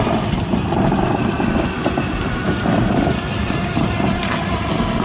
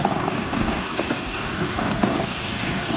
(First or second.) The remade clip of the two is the second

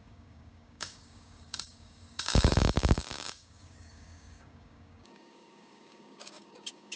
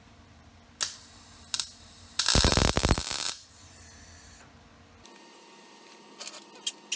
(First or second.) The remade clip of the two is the first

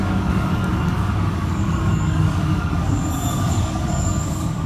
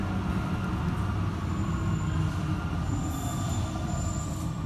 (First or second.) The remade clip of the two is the first